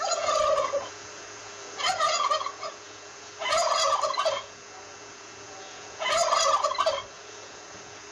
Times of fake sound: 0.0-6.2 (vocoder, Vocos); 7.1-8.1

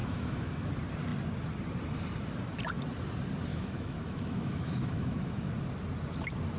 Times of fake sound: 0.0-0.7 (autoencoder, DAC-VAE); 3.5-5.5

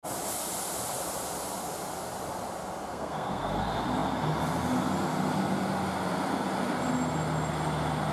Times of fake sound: 2.9-3.6 (codec, SNAC)